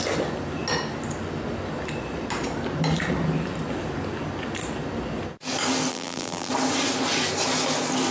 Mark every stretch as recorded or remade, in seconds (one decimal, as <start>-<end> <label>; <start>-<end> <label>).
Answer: 0.0-5.9 recorded; 5.9-6.5 remade; 6.5-8.1 recorded